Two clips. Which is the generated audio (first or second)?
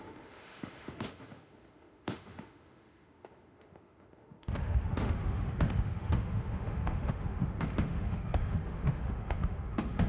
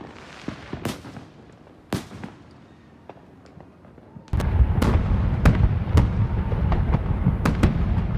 first